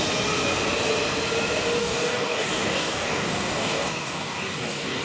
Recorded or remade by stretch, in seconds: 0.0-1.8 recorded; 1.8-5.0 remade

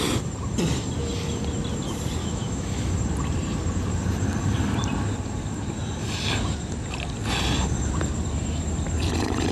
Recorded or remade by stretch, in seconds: 0.0-2.2 recorded; 2.2-2.9 remade; 2.9-9.5 recorded

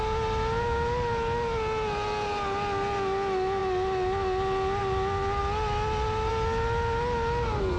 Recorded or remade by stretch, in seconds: 0.0-7.8 recorded

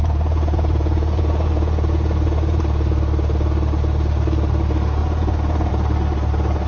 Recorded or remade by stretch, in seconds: 0.0-2.6 remade; 2.6-5.0 recorded; 5.0-5.7 remade; 5.7-6.7 recorded

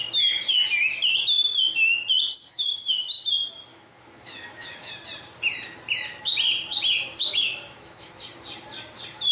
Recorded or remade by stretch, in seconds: 0.0-1.1 recorded; 1.1-1.6 remade; 1.6-2.5 recorded; 2.5-3.0 remade; 3.0-3.7 recorded; 3.7-4.9 remade; 4.9-7.3 recorded; 7.3-8.1 remade; 8.1-9.3 recorded

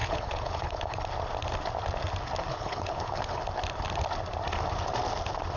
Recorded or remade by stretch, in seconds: 0.0-1.0 remade; 1.0-2.5 recorded; 2.5-3.4 remade; 3.4-5.6 recorded